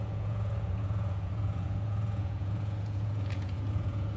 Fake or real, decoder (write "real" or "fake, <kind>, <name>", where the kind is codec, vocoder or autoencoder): fake, vocoder, Vocos